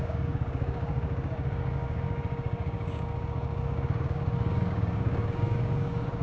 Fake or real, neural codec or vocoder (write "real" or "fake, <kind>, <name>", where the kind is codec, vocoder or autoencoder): fake, codec, DAC